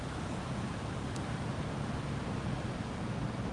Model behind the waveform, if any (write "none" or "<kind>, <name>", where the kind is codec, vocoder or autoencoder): none